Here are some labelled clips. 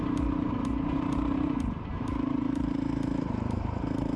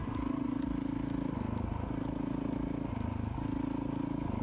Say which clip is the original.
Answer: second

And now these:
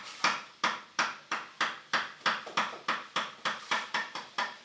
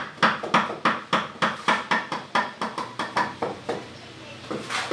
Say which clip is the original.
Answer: second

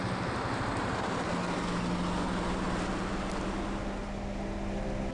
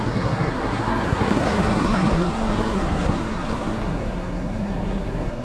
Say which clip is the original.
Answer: first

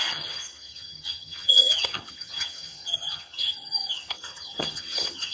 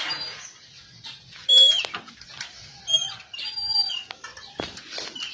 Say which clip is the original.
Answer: second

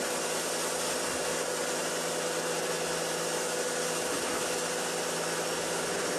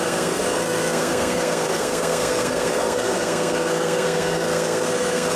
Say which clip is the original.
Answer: first